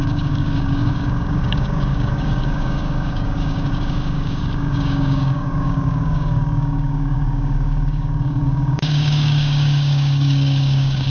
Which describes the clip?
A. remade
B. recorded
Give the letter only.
A